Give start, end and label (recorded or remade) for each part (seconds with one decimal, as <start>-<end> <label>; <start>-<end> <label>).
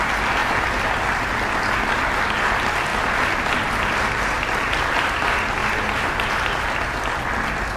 0.0-7.8 recorded